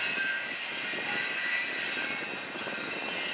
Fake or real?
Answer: real